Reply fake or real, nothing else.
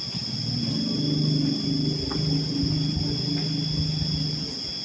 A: real